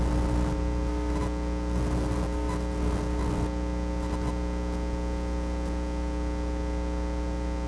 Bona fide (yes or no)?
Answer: yes